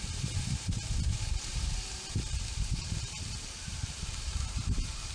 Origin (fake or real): fake